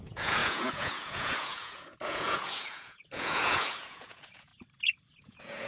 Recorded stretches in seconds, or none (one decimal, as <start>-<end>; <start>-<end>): 4.5-5.2